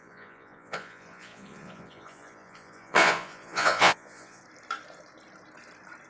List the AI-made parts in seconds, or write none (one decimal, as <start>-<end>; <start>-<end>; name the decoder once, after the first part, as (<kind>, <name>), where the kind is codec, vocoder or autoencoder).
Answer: 0.0-4.4 (vocoder, Vocos)